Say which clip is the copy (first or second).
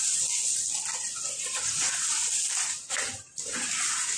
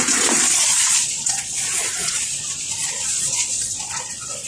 second